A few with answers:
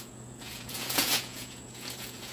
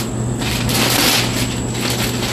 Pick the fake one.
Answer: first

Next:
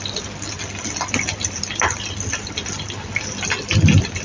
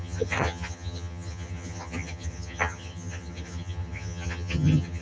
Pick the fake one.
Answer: second